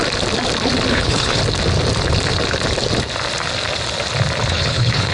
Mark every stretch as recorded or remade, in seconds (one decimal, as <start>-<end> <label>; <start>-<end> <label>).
0.0-0.9 recorded; 0.9-1.4 remade; 1.4-4.5 recorded; 4.5-5.1 remade